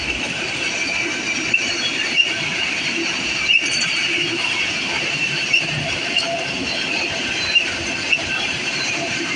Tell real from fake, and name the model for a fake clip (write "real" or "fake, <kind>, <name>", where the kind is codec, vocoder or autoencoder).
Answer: fake, vocoder, BigVGAN v2